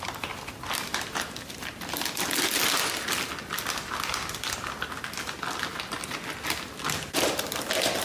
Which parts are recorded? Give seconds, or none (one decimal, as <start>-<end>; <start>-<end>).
0.0-8.0